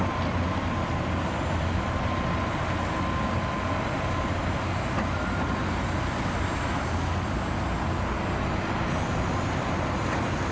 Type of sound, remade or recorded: recorded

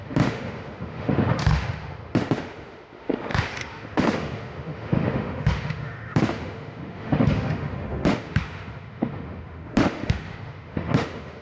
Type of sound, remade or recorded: remade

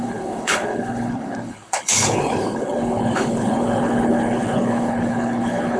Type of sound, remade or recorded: remade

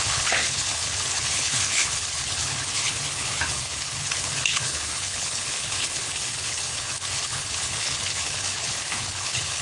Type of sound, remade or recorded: remade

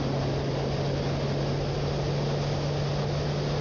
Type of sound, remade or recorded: recorded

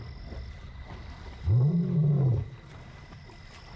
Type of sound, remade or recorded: recorded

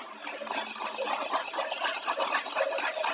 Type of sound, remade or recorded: recorded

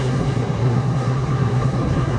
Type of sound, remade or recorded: remade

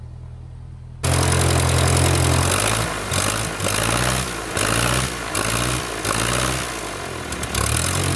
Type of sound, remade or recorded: recorded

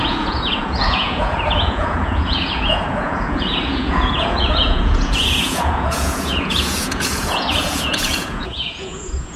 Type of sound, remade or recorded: remade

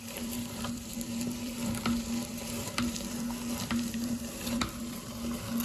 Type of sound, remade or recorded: remade